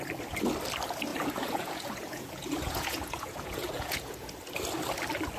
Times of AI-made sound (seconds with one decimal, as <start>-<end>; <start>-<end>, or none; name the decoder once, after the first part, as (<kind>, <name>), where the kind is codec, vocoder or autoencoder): 1.1-4.3 (vocoder, Vocos)